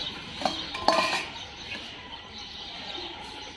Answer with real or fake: real